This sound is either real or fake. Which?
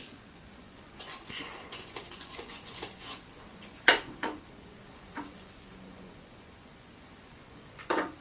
fake